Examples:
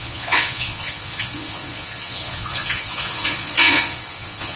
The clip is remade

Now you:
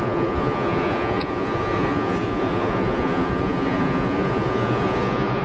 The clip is remade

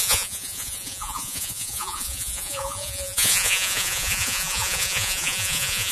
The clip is remade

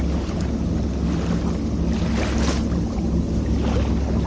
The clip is recorded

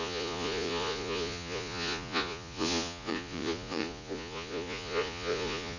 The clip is remade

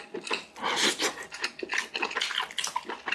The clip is recorded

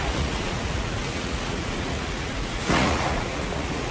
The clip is remade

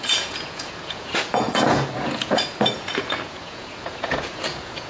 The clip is remade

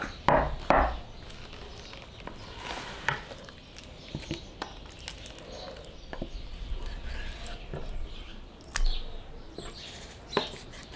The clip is recorded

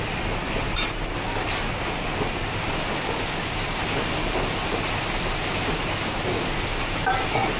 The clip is recorded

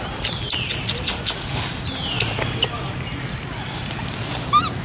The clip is recorded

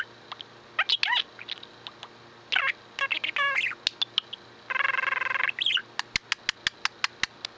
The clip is recorded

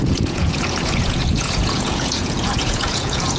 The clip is remade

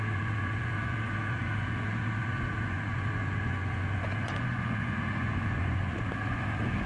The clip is remade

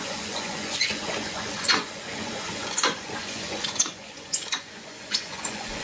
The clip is remade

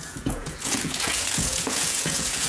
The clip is remade